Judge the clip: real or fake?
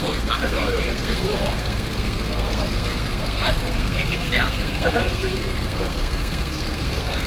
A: fake